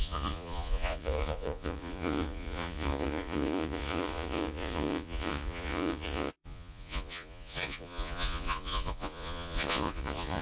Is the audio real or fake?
fake